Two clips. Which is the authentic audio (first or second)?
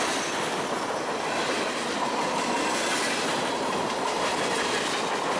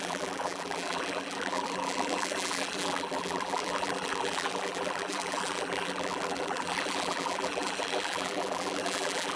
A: first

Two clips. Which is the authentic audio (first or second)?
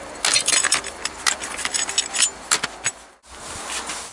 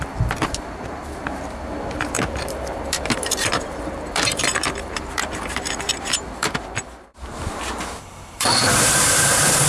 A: first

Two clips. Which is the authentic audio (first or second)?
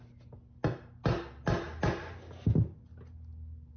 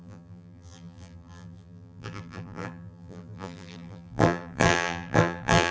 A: first